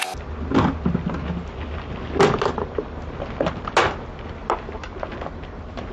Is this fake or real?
real